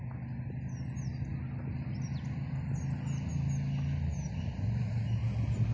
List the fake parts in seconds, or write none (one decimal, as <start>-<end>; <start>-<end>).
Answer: none